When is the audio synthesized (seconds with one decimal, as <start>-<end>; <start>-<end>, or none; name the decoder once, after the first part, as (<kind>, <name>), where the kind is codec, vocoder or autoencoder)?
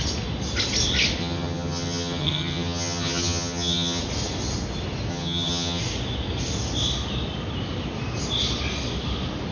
1.2-4.0 (vocoder, HiFi-GAN); 5.1-5.8